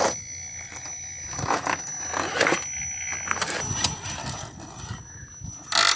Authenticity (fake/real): real